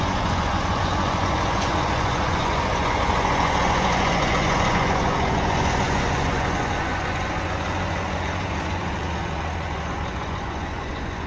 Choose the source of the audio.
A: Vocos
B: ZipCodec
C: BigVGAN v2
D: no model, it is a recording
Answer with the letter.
A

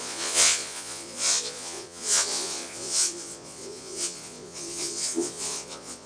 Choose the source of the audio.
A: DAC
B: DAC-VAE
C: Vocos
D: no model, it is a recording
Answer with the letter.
C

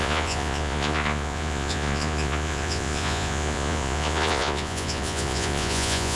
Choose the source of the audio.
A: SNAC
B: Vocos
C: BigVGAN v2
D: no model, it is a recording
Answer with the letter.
B